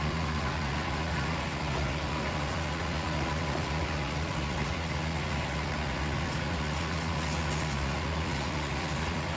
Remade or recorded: remade